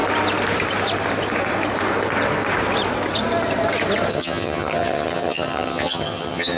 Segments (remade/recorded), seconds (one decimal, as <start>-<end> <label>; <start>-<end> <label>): 0.0-4.1 recorded; 4.1-6.6 remade